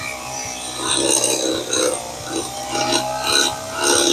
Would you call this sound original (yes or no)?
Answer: yes